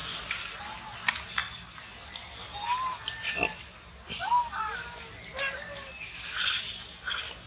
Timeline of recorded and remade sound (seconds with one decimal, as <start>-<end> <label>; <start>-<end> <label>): 0.0-7.5 recorded